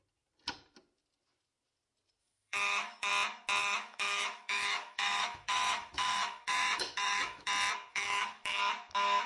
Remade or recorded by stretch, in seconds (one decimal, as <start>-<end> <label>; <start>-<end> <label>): 0.0-2.2 recorded; 2.2-3.1 remade; 3.1-3.6 recorded; 3.6-7.5 remade; 7.5-7.9 recorded; 7.9-8.6 remade; 8.6-9.3 recorded